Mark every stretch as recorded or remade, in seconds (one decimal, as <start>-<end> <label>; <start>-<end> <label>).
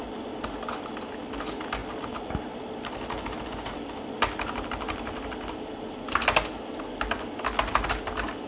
0.0-8.5 recorded